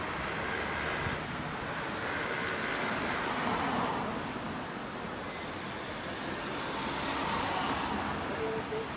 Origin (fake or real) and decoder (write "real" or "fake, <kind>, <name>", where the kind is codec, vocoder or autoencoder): real